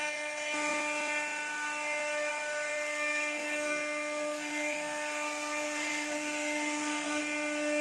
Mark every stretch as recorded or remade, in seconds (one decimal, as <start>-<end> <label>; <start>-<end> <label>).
0.0-2.7 recorded; 2.7-7.2 remade; 7.2-7.8 recorded